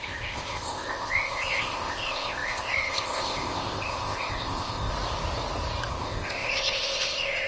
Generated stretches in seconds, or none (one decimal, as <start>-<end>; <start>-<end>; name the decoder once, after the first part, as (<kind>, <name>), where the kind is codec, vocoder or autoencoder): 0.0-4.9 (codec, ZipCodec); 5.9-7.5